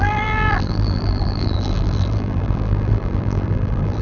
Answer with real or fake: fake